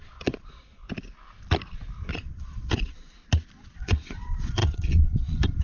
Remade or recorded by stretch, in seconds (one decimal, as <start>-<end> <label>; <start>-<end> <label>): 0.0-0.8 remade; 0.8-2.1 recorded; 2.1-3.2 remade; 3.2-3.8 recorded; 3.8-5.6 remade